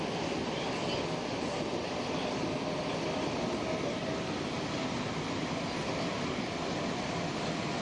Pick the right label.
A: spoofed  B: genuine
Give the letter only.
B